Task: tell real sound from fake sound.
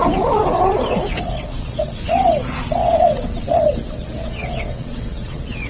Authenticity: fake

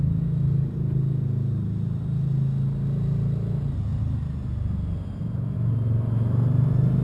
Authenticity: real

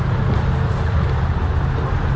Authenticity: real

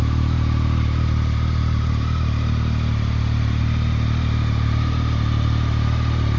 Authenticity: real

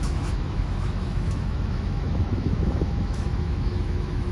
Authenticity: fake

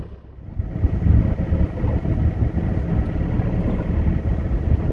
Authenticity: real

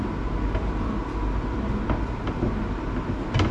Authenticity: real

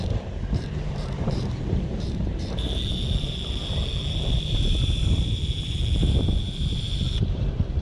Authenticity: fake